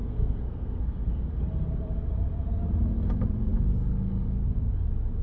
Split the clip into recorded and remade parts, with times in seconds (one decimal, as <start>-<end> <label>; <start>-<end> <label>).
0.0-1.1 remade; 1.1-5.2 recorded